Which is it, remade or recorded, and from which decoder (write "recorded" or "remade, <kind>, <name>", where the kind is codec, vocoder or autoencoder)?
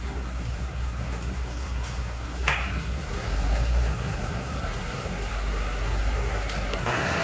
remade, codec, SNAC